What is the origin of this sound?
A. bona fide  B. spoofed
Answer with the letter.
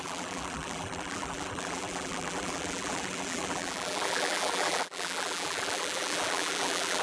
B